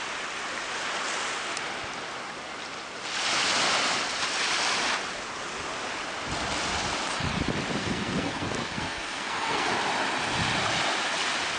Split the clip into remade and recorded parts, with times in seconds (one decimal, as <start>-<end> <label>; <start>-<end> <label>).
0.0-7.8 recorded; 7.8-9.7 remade; 9.7-11.6 recorded